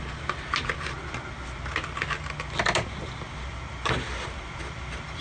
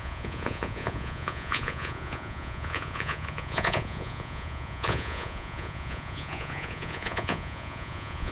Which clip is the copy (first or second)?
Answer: second